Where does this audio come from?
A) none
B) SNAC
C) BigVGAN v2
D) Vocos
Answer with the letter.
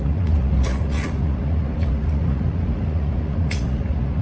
D